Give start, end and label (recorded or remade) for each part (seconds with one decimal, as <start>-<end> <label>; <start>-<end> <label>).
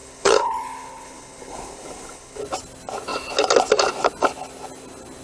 0.0-2.4 remade; 2.4-5.2 recorded